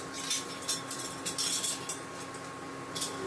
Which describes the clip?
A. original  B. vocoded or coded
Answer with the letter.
A